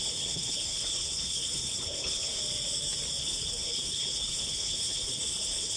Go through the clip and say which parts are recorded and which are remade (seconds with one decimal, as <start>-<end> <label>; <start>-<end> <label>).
0.0-2.4 remade; 2.4-3.2 recorded; 3.2-5.8 remade